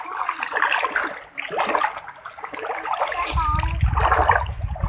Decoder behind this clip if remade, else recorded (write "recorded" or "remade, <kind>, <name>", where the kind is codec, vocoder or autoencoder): recorded